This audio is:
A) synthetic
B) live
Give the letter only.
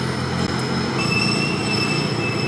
B